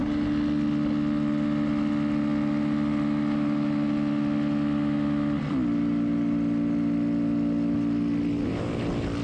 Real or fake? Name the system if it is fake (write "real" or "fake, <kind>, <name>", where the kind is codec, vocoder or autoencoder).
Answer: real